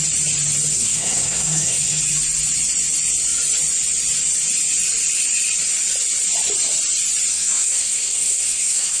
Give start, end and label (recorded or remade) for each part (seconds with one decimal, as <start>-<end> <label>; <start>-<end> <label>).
0.0-0.7 recorded; 0.7-2.0 remade; 2.0-7.3 recorded; 7.3-9.0 remade